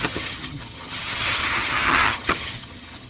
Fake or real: fake